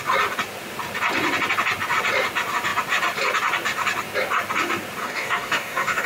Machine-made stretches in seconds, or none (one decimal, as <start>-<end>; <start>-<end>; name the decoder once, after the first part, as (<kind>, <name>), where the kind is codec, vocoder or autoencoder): 5.0-6.1 (codec, DAC)